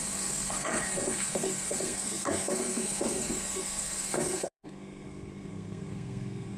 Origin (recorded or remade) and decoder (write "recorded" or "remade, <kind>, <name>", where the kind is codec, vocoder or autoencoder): remade, codec, SNAC